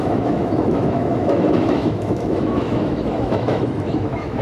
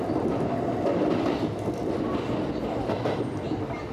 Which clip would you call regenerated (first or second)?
first